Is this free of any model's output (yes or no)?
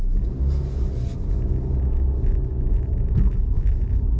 yes